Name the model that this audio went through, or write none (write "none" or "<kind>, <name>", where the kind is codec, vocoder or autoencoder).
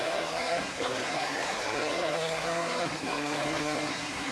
codec, SNAC